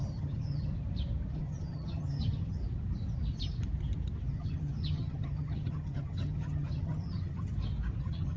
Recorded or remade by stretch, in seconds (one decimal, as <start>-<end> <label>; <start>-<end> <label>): 0.0-0.7 remade; 0.7-1.3 recorded; 1.3-2.6 remade; 2.6-4.3 recorded; 4.3-7.5 remade; 7.5-8.0 recorded; 8.0-8.4 remade